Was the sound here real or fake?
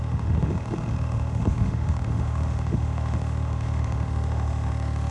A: fake